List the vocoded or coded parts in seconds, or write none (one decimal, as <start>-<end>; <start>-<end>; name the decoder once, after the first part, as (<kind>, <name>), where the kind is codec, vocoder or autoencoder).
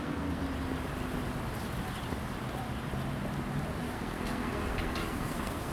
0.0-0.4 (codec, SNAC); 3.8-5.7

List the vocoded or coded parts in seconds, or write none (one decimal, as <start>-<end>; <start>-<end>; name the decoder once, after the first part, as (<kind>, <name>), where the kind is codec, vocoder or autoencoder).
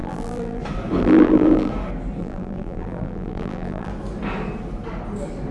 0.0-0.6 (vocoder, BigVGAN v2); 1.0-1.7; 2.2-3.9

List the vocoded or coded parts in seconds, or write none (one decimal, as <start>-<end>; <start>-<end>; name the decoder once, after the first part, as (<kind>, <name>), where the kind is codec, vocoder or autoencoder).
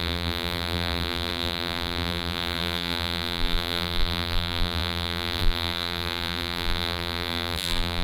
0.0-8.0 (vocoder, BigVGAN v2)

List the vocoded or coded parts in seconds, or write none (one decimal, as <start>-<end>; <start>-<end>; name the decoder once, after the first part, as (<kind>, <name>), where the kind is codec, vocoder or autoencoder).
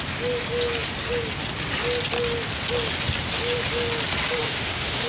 4.4-5.1 (autoencoder, DAC-VAE)